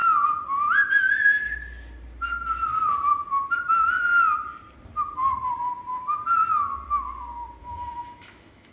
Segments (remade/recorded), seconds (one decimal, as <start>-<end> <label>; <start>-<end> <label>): 0.0-7.6 recorded; 7.6-8.7 remade